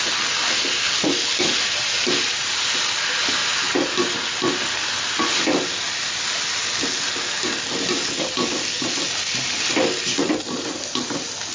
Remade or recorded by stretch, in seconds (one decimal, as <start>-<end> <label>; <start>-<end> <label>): 0.0-11.5 recorded